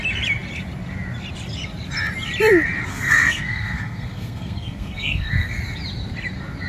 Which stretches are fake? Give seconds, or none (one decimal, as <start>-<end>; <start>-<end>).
2.9-5.6